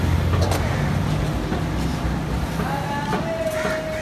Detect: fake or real real